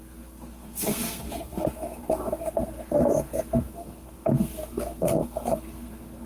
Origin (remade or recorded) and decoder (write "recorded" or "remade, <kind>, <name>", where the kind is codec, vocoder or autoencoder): remade, codec, SNAC